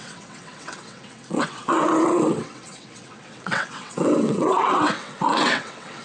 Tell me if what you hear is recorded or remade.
remade